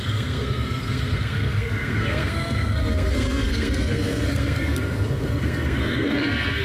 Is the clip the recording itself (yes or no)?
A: no